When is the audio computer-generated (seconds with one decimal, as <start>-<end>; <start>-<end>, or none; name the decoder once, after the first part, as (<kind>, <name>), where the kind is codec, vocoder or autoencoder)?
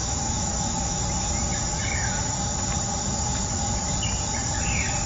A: 0.0-1.0 (autoencoder, DAC-VAE)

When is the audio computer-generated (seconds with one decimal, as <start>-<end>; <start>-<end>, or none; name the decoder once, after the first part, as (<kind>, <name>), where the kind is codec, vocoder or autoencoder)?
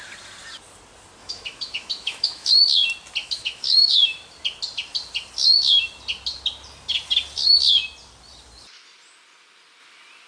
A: 1.2-2.5 (autoencoder, DAC-VAE); 3.2-4.3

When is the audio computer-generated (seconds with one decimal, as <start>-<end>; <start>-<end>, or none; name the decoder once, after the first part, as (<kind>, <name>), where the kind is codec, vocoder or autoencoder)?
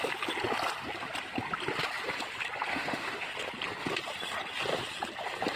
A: 2.7-3.3 (autoencoder, DAC-VAE)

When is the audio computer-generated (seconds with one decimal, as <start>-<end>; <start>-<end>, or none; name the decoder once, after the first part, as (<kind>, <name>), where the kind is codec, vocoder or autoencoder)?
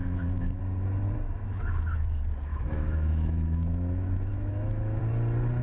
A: 0.0-0.6 (autoencoder, DAC-VAE); 2.5-5.0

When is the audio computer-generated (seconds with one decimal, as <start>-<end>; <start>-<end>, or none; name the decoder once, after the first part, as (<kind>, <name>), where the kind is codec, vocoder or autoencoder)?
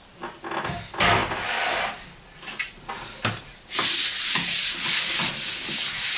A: none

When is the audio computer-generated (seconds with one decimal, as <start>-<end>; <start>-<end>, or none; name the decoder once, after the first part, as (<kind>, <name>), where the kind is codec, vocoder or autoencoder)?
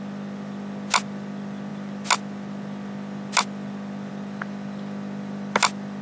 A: none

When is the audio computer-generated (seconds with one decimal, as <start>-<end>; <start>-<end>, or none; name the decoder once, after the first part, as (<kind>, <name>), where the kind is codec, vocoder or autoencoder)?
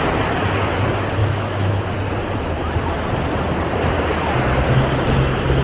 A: 1.2-1.8 (autoencoder, DAC-VAE)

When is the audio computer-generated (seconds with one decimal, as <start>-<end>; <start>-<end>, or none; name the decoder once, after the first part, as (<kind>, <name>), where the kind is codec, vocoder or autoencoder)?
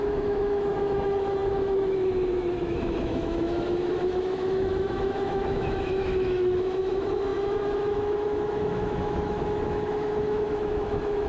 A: 0.0-11.3 (autoencoder, DAC-VAE)